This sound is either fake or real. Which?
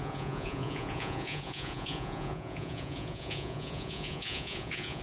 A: fake